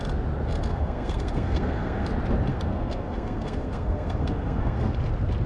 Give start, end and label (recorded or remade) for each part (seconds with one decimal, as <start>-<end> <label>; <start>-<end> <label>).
0.0-0.7 recorded; 0.7-2.1 remade; 2.1-2.5 recorded; 2.5-4.9 remade; 4.9-5.5 recorded

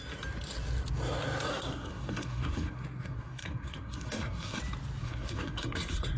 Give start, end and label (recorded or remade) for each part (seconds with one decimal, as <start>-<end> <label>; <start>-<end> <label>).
0.0-1.5 recorded; 1.5-4.6 remade; 4.6-5.0 recorded; 5.0-6.2 remade

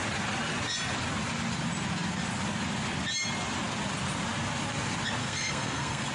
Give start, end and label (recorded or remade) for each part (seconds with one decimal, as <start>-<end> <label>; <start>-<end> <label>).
0.0-5.2 recorded; 5.2-6.1 remade

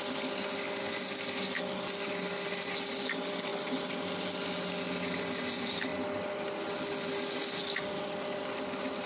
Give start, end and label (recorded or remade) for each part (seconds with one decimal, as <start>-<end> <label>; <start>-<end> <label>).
0.0-9.1 recorded

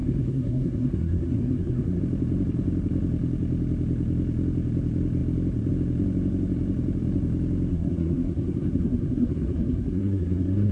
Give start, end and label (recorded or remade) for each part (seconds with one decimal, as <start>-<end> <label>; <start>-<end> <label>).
0.0-2.0 remade; 2.0-7.7 recorded; 7.7-10.7 remade

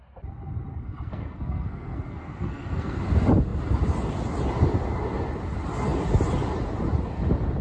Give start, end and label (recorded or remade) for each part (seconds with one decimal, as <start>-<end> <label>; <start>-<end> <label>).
0.0-0.7 recorded; 0.7-3.0 remade; 3.0-7.6 recorded

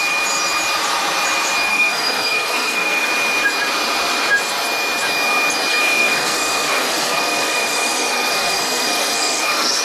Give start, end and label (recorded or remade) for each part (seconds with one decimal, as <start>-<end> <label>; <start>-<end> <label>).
0.0-1.7 recorded; 1.7-3.1 remade; 3.1-5.7 recorded; 5.7-9.8 remade

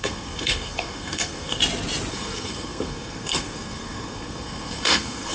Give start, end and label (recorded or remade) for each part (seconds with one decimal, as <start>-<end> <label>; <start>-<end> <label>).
0.0-1.6 remade; 1.6-2.1 recorded; 2.1-5.3 remade